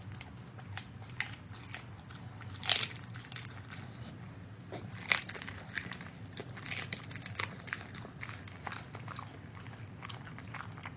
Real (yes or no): yes